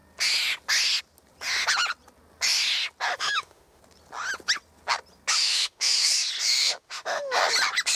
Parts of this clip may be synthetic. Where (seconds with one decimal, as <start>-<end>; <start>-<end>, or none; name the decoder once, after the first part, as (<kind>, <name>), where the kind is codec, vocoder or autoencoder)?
3.1-3.8 (autoencoder, DAC-VAE); 5.4-6.1; 6.6-7.4